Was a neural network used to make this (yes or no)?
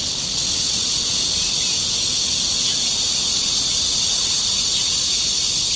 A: no